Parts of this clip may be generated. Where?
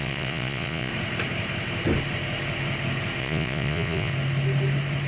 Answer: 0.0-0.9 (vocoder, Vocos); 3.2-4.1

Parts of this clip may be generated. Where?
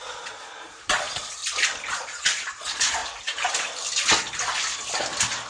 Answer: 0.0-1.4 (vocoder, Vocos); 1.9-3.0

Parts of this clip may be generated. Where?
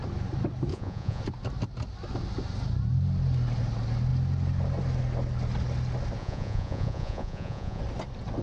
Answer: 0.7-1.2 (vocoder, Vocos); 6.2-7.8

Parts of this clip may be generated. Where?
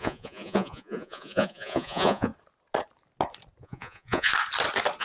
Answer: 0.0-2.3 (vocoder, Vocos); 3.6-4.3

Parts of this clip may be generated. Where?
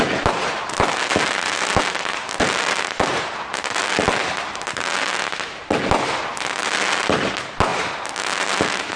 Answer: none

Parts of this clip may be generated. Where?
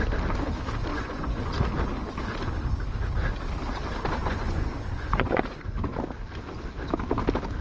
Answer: 0.9-1.5 (vocoder, Vocos); 4.2-6.0